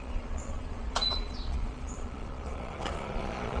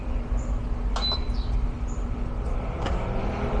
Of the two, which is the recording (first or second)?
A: second